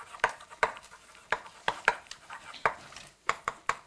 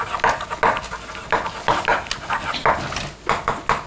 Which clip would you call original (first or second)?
second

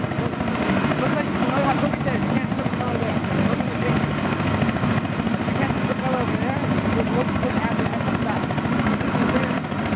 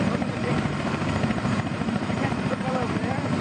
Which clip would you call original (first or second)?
first